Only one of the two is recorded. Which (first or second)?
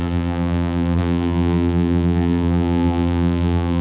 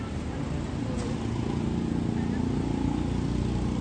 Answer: second